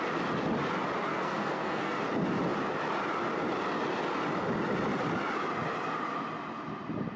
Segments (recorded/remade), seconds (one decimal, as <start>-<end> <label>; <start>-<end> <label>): 0.0-1.1 recorded; 1.1-1.9 remade; 1.9-7.2 recorded